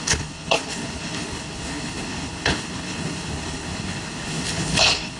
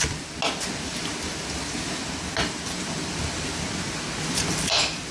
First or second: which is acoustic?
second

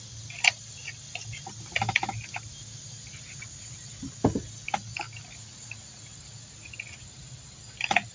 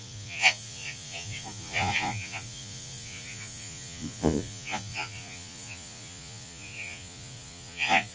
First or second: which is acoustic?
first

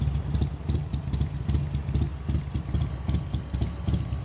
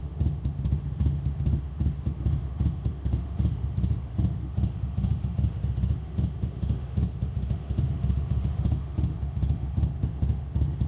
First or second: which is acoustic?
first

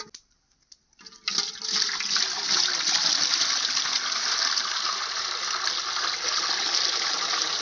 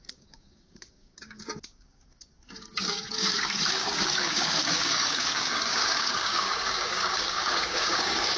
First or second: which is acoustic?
first